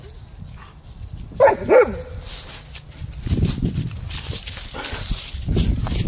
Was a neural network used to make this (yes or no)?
no